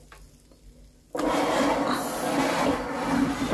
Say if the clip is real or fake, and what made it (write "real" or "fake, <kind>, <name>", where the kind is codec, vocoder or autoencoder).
real